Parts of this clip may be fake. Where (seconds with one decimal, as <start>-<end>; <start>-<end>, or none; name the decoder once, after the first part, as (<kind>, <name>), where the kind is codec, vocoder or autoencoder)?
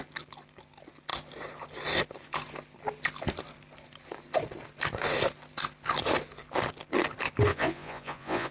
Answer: 7.5-8.5 (vocoder, Vocos)